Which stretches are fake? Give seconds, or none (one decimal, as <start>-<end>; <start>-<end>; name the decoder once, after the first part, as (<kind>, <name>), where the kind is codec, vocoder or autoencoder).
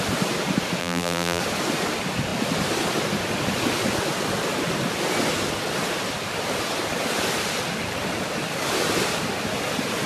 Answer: 0.8-1.4 (vocoder, BigVGAN v2)